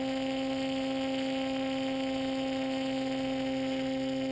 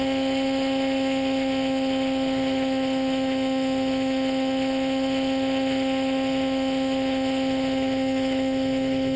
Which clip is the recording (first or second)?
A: first